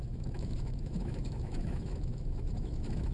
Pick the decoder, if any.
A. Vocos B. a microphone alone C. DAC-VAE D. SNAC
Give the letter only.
C